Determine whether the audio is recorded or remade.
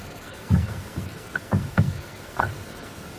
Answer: remade